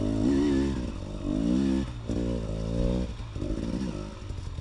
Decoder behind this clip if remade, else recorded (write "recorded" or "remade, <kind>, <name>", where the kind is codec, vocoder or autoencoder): recorded